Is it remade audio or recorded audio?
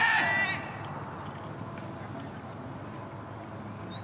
recorded